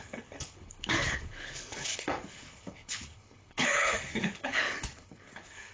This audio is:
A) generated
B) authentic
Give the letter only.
A